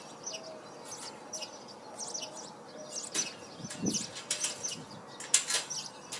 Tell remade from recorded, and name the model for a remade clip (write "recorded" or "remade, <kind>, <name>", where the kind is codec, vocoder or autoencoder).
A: recorded